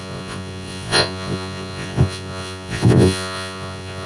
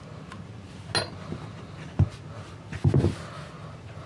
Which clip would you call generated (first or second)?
first